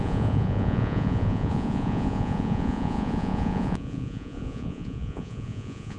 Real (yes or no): no